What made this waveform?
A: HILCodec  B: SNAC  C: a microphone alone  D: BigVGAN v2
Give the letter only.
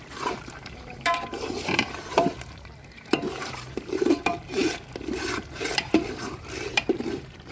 D